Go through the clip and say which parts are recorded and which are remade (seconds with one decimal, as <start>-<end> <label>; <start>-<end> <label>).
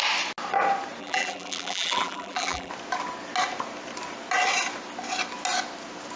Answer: 0.0-1.0 recorded; 1.0-2.7 remade; 2.7-6.2 recorded